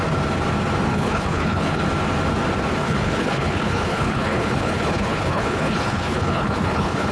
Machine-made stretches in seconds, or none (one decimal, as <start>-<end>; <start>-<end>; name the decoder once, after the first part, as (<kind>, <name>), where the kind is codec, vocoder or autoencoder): 0.9-1.8 (codec, HILCodec); 2.8-7.1